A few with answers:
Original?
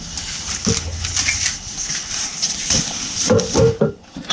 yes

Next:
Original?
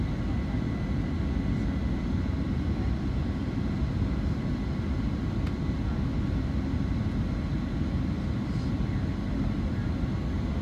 yes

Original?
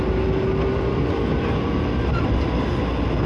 no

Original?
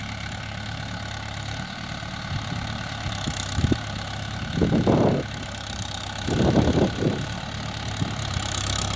no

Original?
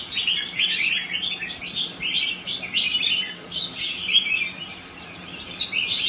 no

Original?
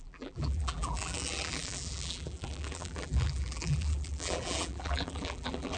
no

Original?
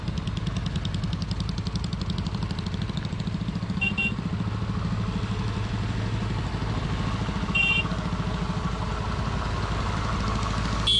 yes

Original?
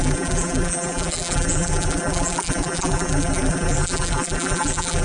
no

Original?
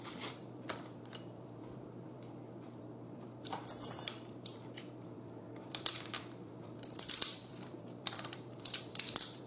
no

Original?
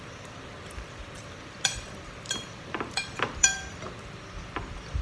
no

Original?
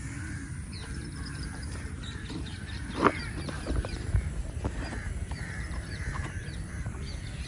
no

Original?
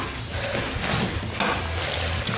yes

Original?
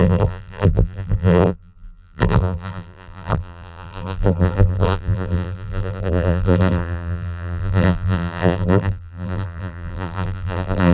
no